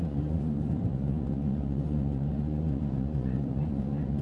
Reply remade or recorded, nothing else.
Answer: remade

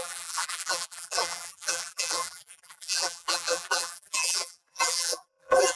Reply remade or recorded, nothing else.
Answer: remade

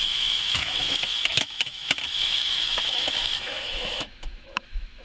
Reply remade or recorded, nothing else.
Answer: remade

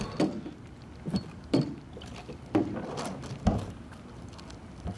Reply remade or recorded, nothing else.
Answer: recorded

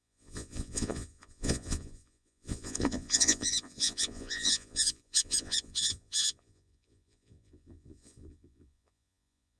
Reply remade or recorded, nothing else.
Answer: remade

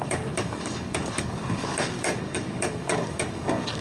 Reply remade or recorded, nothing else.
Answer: remade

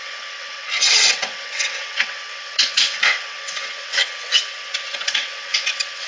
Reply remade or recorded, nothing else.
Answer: remade